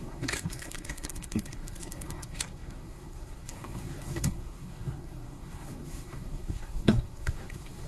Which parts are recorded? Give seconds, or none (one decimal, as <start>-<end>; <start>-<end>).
none